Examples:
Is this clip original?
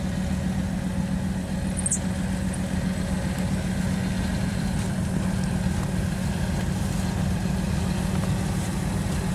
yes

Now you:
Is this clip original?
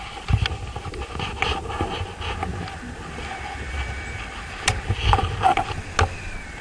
yes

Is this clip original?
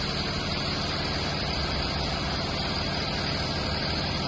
yes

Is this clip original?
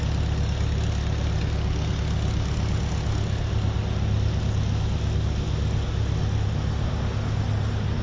yes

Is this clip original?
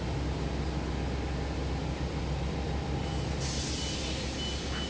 yes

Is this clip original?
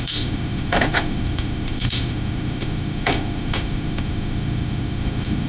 no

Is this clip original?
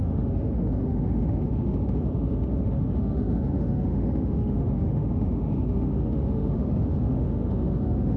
no